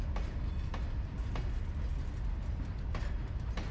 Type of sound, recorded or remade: recorded